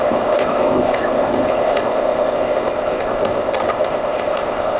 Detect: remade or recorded remade